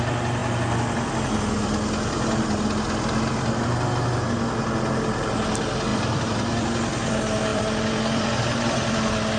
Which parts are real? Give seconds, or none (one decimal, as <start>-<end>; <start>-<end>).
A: 0.0-5.9; 7.1-7.5; 8.9-9.4